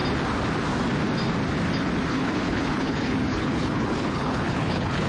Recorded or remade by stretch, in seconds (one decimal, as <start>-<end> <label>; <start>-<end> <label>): 0.0-2.1 recorded; 2.1-5.1 remade